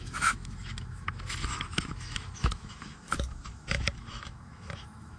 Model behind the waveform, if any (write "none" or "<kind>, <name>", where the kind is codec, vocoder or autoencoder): autoencoder, DAC-VAE